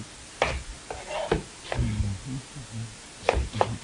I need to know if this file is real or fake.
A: real